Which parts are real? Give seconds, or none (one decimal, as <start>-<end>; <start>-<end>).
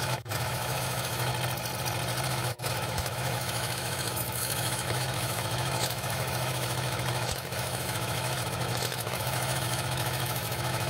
1.3-2.3